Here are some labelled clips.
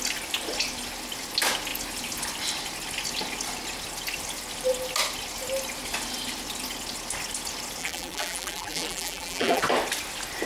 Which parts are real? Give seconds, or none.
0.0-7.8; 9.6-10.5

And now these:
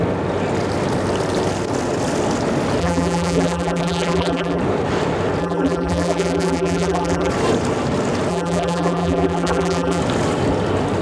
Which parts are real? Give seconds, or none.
0.0-2.8; 4.6-5.4; 7.3-8.3; 10.0-11.0

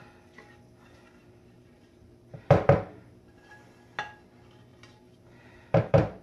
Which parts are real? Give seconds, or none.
0.0-1.2; 3.5-4.7

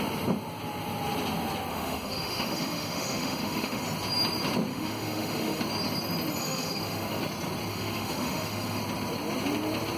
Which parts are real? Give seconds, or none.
0.0-1.7; 3.8-4.7; 5.6-6.4; 7.2-7.7; 8.8-10.0

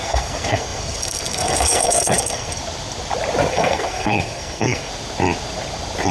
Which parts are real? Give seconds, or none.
2.6-3.5; 4.9-6.1